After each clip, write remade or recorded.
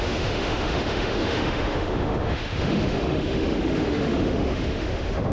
remade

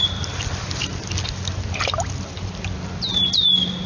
recorded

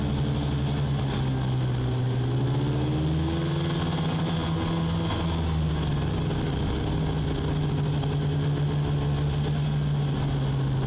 recorded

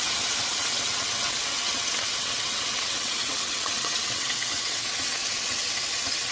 remade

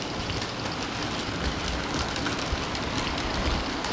recorded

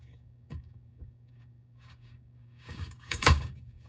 remade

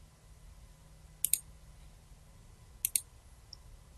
recorded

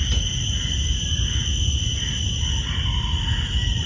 recorded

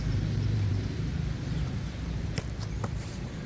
remade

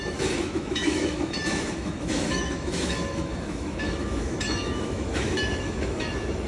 remade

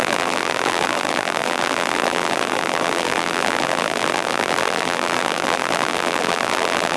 remade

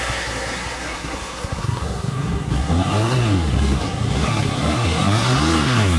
remade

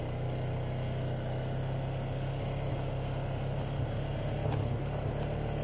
recorded